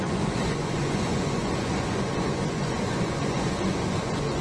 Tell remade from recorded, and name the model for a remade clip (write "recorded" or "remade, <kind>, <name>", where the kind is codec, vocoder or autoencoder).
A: remade, vocoder, Vocos